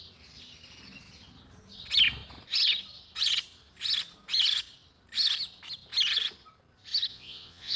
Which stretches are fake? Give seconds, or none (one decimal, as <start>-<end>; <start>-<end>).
7.1-7.8